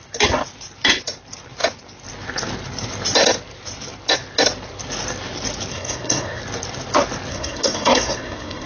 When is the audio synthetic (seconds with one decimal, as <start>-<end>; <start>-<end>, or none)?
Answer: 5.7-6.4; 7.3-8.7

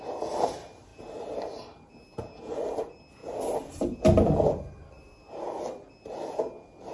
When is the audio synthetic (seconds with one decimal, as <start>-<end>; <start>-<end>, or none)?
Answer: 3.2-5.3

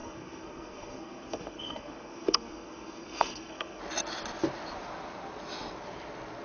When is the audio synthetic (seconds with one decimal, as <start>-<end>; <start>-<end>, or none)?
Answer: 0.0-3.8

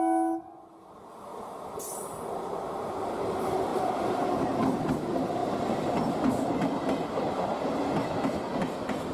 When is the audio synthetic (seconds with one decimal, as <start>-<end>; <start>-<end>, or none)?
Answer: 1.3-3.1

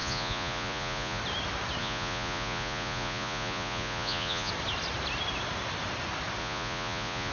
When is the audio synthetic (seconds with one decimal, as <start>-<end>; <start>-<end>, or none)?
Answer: 0.0-1.2; 1.8-4.5; 6.4-7.3

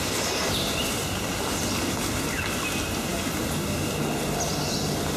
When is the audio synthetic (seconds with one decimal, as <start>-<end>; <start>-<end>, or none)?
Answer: 3.1-4.0